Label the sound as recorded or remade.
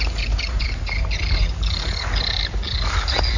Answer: recorded